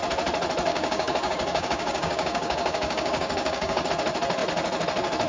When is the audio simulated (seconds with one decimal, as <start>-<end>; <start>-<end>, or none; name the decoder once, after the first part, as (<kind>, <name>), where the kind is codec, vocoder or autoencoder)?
0.7-3.9 (codec, DAC)